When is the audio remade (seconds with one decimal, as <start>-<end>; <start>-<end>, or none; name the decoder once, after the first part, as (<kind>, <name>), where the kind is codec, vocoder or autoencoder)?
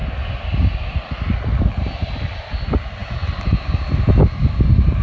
none